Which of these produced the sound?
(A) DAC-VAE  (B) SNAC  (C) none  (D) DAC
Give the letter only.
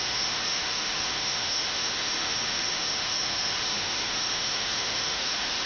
A